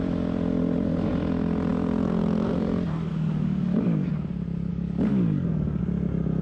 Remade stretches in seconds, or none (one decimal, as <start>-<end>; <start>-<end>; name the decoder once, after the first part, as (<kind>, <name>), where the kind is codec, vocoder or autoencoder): 3.1-4.1 (codec, DAC); 4.7-5.8